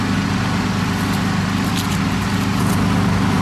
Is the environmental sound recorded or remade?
recorded